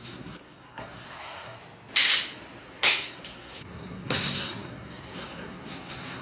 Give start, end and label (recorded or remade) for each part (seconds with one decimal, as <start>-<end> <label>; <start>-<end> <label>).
0.0-1.6 remade; 1.6-2.6 recorded; 2.6-6.2 remade